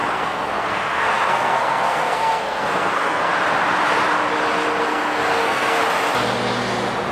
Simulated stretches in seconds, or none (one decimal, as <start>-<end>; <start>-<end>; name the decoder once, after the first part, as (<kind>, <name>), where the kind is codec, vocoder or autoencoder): 0.0-3.3 (codec, SNAC); 4.8-5.8

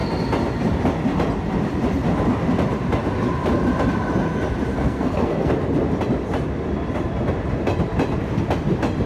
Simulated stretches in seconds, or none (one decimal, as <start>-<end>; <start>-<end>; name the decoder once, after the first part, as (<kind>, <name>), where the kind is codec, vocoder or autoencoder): 4.7-5.5 (codec, SNAC)

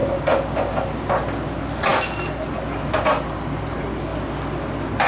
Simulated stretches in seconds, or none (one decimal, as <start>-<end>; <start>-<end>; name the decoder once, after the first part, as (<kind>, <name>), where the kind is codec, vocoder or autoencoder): none